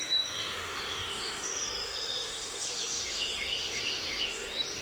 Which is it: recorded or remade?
remade